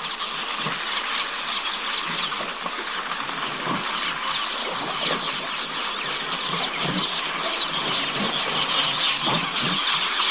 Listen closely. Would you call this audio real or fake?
real